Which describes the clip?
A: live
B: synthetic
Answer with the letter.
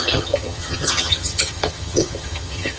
B